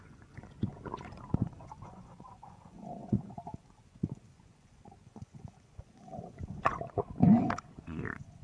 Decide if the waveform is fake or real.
fake